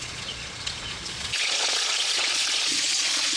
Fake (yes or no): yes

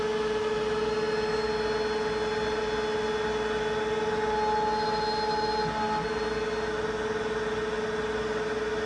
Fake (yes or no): no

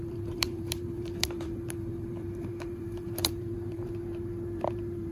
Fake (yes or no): yes